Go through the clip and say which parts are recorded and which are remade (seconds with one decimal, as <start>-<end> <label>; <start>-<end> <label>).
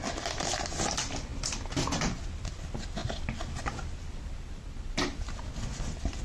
0.0-6.2 recorded